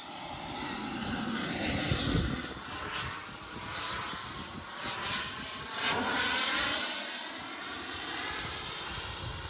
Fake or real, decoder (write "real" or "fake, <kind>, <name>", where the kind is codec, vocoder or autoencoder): real